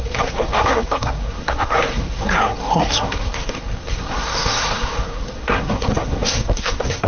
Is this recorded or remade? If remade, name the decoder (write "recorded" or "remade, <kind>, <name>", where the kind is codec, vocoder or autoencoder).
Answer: remade, codec, SNAC